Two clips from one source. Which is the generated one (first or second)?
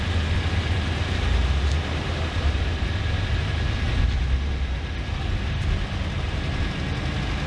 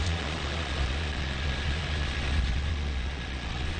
second